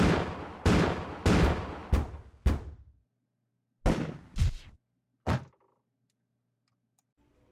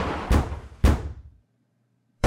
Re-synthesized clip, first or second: second